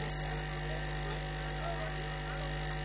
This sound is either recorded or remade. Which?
recorded